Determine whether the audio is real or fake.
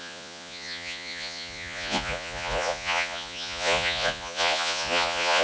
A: fake